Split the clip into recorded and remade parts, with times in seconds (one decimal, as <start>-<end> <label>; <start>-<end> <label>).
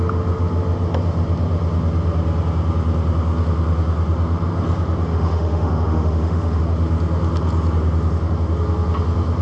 0.0-5.1 recorded; 5.1-6.6 remade; 6.6-9.4 recorded